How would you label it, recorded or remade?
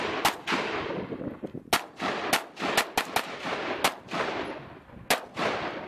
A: recorded